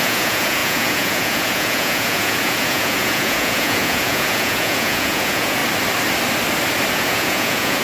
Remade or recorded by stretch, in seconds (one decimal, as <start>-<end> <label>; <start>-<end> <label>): 0.0-5.6 remade; 5.6-6.9 recorded; 6.9-7.8 remade